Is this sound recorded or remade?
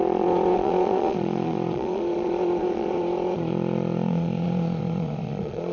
remade